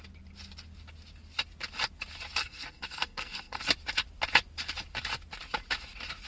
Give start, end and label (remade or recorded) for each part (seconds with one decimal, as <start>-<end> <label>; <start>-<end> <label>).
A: 0.0-2.4 recorded; 2.4-3.6 remade; 3.6-6.3 recorded